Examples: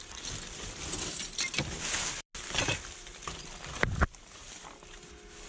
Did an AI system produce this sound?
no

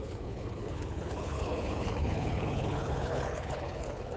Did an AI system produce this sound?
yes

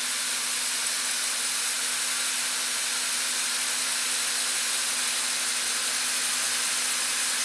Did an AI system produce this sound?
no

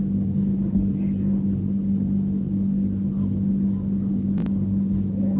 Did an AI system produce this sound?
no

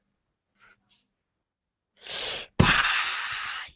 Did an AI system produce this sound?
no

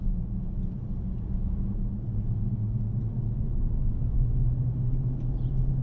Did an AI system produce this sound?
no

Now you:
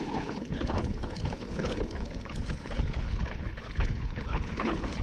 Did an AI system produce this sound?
yes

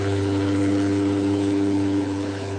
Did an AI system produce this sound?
yes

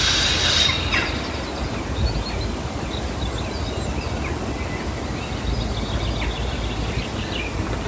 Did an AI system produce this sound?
no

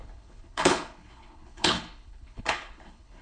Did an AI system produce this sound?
yes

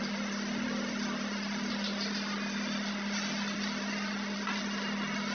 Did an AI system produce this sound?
no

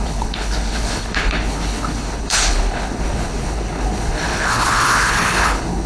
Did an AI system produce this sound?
yes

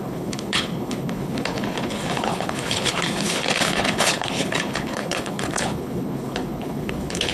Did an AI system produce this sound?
yes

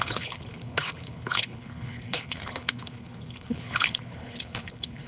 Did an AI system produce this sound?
yes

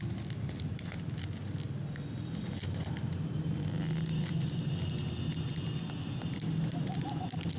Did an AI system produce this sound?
no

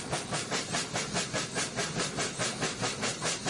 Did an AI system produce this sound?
no